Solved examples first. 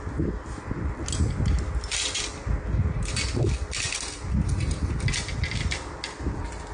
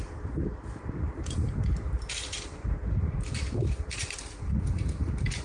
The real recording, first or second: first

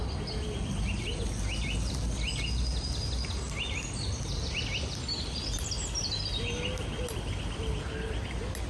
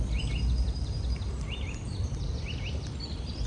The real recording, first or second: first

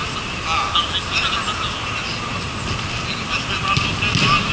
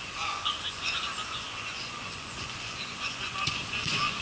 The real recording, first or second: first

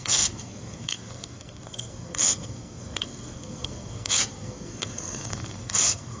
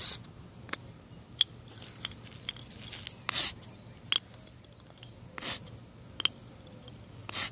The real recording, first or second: second